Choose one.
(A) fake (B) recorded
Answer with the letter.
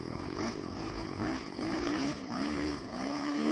A